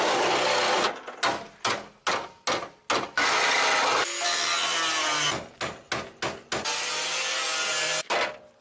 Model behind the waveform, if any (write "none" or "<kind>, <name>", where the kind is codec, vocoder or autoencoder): none